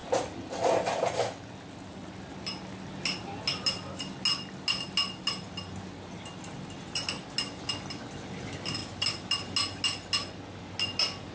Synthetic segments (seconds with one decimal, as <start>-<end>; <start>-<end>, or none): none